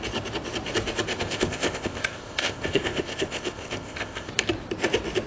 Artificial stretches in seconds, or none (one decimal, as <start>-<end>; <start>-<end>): 1.1-4.3